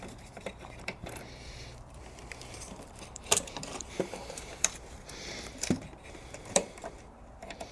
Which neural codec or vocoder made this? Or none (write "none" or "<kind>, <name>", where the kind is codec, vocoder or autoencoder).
vocoder, BigVGAN v2